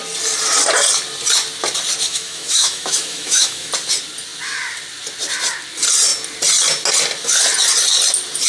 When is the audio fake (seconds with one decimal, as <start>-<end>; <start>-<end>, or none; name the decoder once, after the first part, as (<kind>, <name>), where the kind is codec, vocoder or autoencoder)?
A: 2.1-3.7 (autoencoder, DAC-VAE)

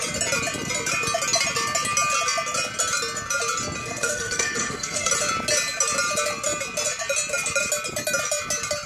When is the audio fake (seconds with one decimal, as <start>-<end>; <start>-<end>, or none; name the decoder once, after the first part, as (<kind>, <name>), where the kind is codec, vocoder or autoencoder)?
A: 3.8-5.1 (codec, SNAC)

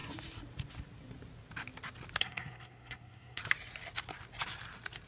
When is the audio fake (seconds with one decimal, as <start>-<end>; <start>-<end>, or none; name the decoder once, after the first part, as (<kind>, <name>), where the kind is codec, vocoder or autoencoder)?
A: 2.2-3.4 (codec, SNAC)

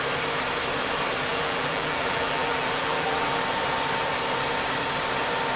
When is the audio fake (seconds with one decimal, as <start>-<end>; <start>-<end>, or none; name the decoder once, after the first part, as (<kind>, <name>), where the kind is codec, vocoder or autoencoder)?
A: 1.3-3.4 (vocoder, BigVGAN v2)

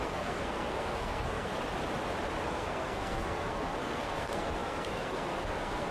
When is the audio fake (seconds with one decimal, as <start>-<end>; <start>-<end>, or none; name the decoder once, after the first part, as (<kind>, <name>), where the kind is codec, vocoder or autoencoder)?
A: 0.0-1.5 (codec, SNAC); 2.5-5.9

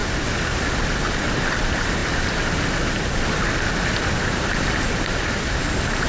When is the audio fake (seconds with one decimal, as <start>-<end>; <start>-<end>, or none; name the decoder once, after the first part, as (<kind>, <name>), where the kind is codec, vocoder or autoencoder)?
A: none

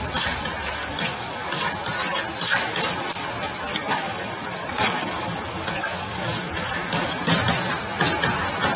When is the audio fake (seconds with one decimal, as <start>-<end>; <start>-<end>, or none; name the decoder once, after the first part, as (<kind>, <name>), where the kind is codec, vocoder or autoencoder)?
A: 0.8-1.6 (codec, DAC); 3.7-7.2

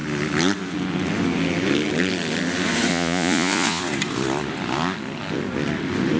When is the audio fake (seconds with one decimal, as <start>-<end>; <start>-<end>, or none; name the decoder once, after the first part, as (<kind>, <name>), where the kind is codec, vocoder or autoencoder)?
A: 2.9-3.8 (vocoder, Vocos)